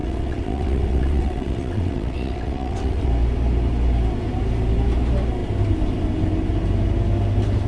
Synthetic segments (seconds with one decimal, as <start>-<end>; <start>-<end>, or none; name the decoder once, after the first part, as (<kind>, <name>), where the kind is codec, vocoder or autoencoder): 0.0-3.1 (vocoder, WaveNeXt)